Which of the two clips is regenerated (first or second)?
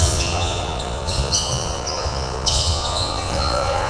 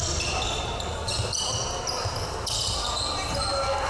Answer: first